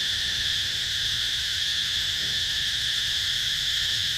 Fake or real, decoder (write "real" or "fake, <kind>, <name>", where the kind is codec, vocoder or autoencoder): fake, autoencoder, DAC-VAE